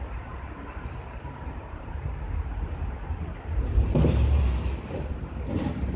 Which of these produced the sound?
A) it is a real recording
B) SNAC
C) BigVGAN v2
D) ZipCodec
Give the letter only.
C